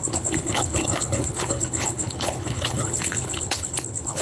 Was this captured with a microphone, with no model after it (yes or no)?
no